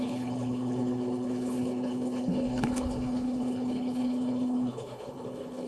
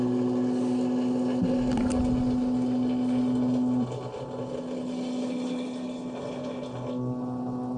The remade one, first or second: first